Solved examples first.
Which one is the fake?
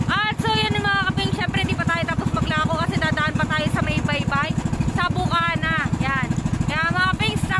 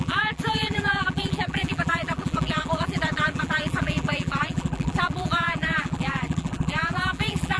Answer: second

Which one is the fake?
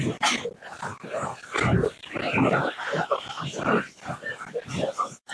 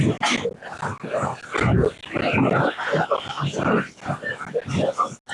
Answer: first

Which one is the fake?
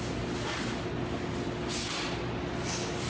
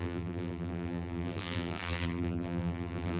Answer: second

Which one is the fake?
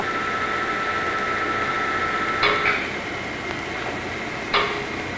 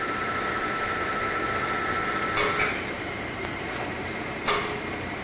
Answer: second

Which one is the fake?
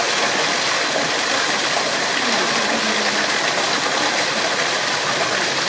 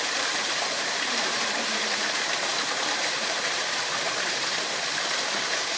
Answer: second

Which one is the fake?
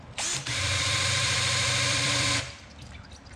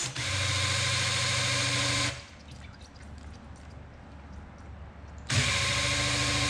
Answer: first